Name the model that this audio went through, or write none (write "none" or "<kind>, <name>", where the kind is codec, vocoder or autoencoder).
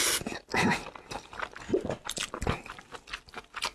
none